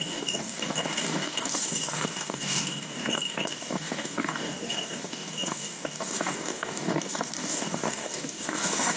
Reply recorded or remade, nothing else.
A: remade